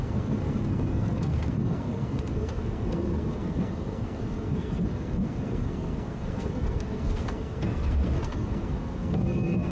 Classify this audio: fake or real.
fake